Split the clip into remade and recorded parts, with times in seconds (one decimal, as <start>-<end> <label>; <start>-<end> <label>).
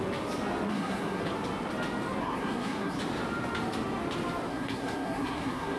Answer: 0.0-0.7 recorded; 0.7-1.2 remade; 1.2-2.2 recorded; 2.2-3.0 remade; 3.0-4.5 recorded; 4.5-5.8 remade